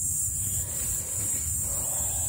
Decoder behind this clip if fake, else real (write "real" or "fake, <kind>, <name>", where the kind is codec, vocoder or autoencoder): real